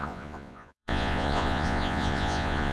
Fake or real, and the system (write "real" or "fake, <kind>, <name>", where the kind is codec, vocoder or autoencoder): fake, vocoder, Vocos